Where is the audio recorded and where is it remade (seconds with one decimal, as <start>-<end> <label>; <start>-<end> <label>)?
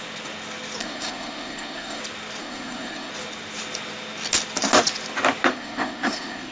0.0-0.8 recorded; 0.8-2.0 remade; 2.0-2.4 recorded; 2.4-3.1 remade; 3.1-5.5 recorded; 5.5-6.5 remade